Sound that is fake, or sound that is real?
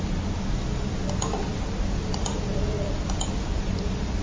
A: real